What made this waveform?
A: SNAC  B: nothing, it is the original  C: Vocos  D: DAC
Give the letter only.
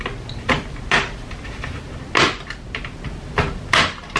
B